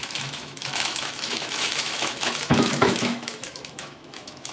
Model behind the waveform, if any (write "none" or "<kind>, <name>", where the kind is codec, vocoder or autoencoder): autoencoder, DAC-VAE